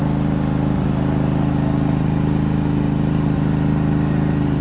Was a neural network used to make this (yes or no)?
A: no